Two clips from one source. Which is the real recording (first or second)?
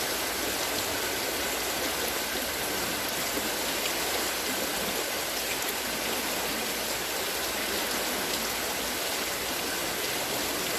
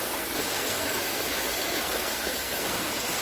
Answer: first